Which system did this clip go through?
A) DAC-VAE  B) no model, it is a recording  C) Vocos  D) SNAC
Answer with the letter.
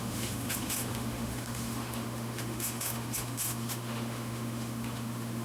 A